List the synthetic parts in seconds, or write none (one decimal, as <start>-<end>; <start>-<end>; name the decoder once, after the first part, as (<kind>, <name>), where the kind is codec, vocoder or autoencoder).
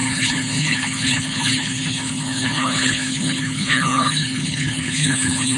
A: 0.0-5.6 (codec, HILCodec)